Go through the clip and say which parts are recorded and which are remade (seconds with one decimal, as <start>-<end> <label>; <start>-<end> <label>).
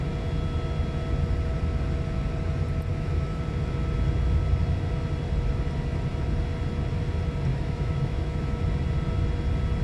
0.0-2.9 recorded; 2.9-3.4 remade; 3.4-7.5 recorded; 7.5-8.6 remade; 8.6-9.8 recorded